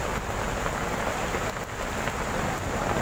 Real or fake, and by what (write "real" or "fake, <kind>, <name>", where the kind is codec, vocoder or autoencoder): real